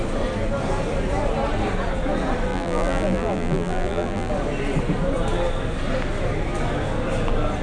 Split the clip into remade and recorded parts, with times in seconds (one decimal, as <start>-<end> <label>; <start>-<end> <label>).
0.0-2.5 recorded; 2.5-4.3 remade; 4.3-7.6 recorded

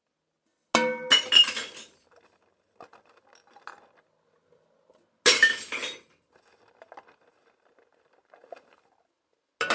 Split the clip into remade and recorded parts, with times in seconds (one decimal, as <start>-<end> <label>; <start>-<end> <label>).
0.0-9.7 recorded

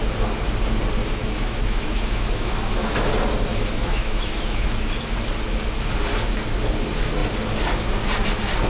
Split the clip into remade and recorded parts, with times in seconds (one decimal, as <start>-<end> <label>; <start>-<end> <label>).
0.0-1.0 recorded; 1.0-3.0 remade; 3.0-3.5 recorded; 3.5-5.0 remade; 5.0-8.7 recorded

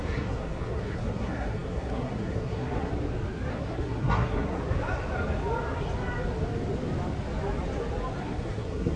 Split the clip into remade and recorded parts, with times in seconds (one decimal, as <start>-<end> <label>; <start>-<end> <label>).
0.0-2.9 remade; 2.9-3.5 recorded; 3.5-4.6 remade; 4.6-8.2 recorded; 8.2-9.0 remade

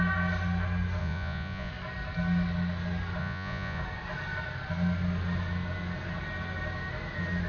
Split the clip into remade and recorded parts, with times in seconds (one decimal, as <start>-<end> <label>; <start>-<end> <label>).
0.0-1.0 recorded; 1.0-1.7 remade; 1.7-3.2 recorded; 3.2-3.8 remade; 3.8-7.5 recorded

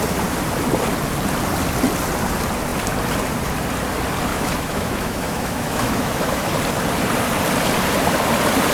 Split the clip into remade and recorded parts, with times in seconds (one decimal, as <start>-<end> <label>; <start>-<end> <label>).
0.0-4.3 recorded; 4.3-6.5 remade; 6.5-8.7 recorded

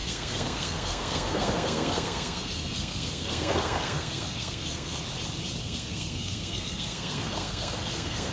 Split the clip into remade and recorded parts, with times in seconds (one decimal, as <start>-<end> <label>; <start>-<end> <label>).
0.0-5.0 remade; 5.0-5.6 recorded; 5.6-8.3 remade